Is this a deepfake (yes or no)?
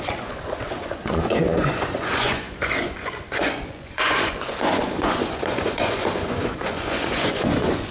yes